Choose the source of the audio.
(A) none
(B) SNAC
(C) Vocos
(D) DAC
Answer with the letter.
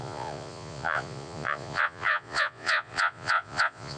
C